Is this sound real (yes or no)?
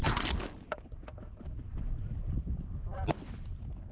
yes